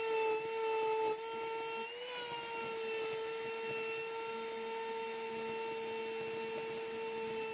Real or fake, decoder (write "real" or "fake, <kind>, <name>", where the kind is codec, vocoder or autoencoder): real